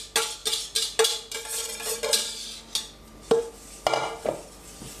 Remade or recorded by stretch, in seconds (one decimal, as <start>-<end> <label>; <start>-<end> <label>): 0.0-5.0 recorded